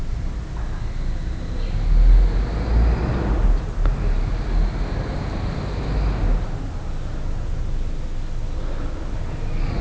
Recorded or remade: recorded